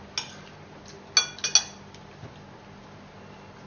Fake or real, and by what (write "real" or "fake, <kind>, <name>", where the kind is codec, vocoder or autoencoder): real